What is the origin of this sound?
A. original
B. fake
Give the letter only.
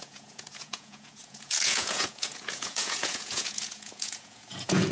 B